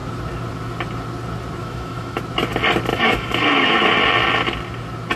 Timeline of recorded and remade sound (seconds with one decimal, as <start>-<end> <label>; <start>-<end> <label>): 0.0-1.6 recorded; 1.6-2.2 remade; 2.2-2.9 recorded; 2.9-3.9 remade; 3.9-5.2 recorded